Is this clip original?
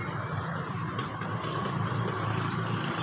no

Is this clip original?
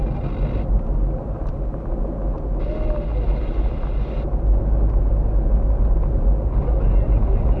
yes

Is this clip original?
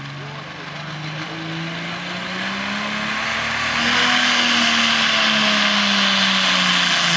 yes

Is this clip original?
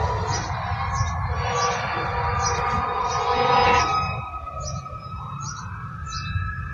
yes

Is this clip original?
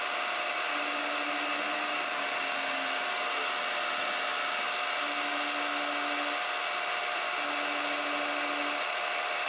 yes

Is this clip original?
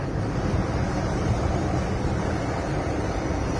no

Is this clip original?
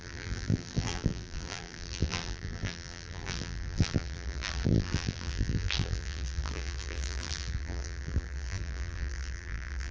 no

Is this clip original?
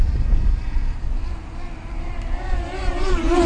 no